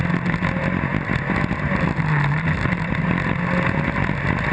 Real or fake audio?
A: real